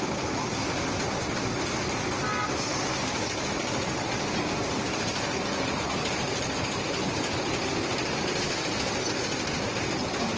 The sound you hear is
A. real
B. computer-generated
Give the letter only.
A